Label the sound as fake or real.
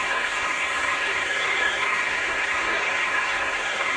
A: fake